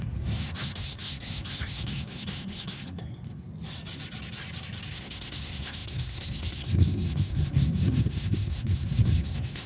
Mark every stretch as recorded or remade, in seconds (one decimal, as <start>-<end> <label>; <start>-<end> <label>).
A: 0.0-3.5 remade; 3.5-4.9 recorded; 4.9-9.7 remade